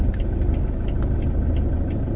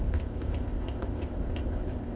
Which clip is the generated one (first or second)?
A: second